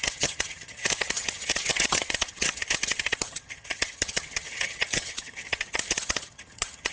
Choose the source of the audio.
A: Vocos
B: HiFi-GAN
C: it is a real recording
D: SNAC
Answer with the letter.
B